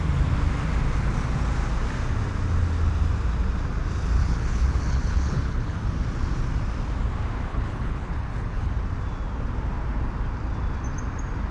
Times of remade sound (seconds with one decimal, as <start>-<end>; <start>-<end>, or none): 4.2-5.8; 7.5-8.7